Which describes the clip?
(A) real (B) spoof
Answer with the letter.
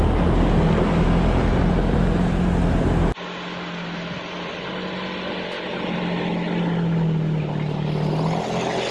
A